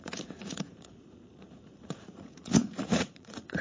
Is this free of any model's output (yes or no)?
no